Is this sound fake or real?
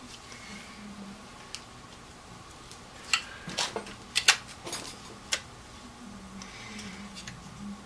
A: real